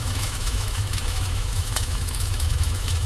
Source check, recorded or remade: remade